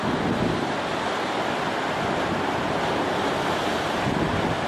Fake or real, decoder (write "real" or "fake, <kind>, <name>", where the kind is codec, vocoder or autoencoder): real